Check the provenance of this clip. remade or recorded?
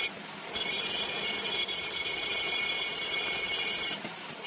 recorded